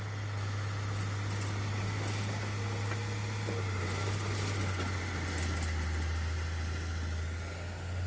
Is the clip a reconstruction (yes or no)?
no